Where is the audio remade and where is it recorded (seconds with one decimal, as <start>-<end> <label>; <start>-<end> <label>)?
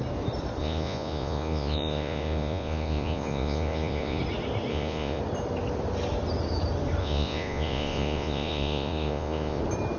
0.0-0.6 recorded; 0.6-4.2 remade; 4.2-4.7 recorded; 4.7-5.2 remade; 5.2-7.0 recorded; 7.0-9.6 remade; 9.6-10.0 recorded